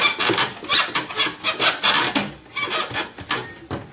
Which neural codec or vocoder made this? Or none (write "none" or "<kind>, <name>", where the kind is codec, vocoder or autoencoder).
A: none